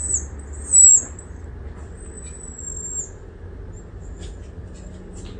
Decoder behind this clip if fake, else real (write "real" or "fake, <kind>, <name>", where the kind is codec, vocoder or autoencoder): real